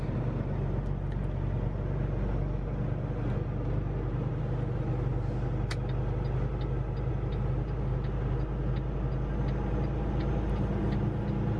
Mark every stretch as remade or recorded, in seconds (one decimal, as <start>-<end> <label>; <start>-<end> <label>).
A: 0.0-11.6 recorded